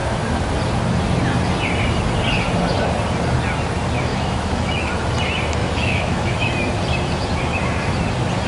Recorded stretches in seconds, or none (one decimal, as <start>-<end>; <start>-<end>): 0.0-4.1; 4.9-5.6; 6.5-8.5

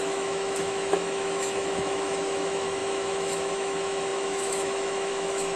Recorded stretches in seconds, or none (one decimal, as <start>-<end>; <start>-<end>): none

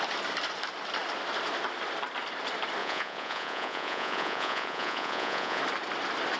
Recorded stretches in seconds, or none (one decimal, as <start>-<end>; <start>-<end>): 0.0-2.8; 5.6-6.4

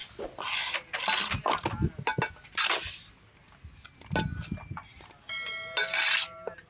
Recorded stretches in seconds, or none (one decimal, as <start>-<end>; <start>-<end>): 0.0-6.7

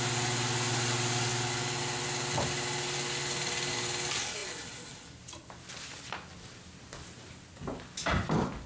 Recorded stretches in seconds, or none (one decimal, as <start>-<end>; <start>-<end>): 0.0-8.7

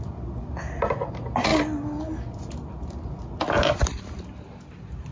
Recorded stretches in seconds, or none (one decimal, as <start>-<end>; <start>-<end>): 0.0-5.1

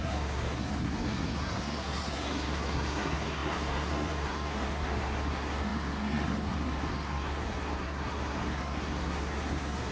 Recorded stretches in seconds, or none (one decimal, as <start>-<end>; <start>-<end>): none